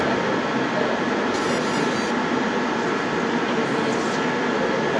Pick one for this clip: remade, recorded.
recorded